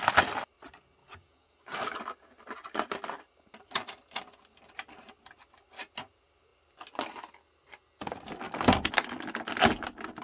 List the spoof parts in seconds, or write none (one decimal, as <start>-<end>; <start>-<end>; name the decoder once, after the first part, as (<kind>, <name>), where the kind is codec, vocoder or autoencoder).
1.0-2.0 (codec, DAC)